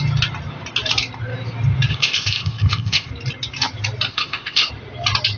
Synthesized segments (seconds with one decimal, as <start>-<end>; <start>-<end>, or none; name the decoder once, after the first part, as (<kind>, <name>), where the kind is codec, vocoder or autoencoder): 1.9-3.1 (codec, ZipCodec); 4.1-4.7